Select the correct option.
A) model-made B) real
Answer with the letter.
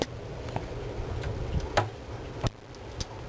B